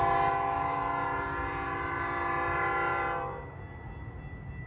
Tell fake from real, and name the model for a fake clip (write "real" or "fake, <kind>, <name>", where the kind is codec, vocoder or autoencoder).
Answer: real